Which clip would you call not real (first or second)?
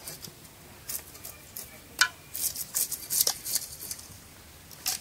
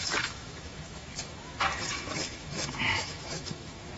second